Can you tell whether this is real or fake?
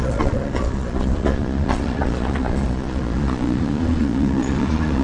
fake